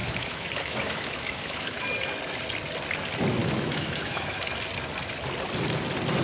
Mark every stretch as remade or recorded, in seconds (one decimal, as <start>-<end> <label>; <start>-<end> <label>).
0.0-1.8 remade; 1.8-3.4 recorded; 3.4-4.4 remade; 4.4-6.2 recorded